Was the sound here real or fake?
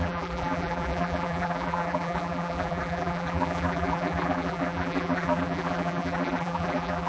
fake